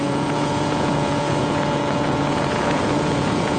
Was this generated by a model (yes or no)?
yes